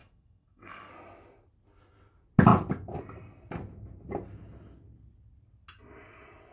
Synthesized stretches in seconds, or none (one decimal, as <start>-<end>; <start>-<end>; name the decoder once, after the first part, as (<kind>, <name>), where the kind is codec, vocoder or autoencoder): 0.0-0.9 (codec, SNAC)